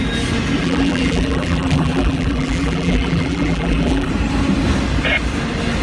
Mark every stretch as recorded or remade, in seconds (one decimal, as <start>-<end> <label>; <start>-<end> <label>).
0.0-0.6 recorded; 0.6-4.1 remade; 4.1-5.8 recorded